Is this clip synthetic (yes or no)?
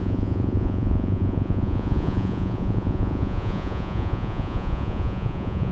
yes